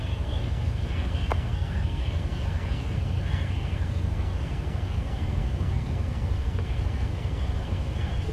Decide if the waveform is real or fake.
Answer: fake